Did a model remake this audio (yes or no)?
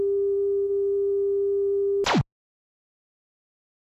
no